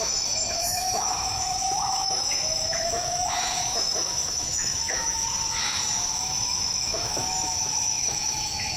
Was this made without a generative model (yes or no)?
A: no